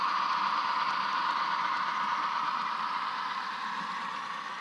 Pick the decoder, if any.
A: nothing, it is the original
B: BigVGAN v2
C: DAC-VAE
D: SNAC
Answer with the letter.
A